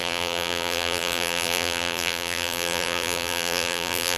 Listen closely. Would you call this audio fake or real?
fake